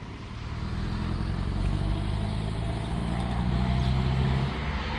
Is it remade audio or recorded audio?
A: recorded